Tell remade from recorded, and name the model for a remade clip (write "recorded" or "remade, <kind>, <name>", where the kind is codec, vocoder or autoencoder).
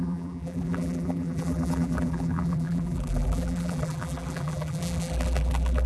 remade, vocoder, BigVGAN v2